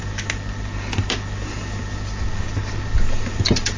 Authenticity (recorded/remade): recorded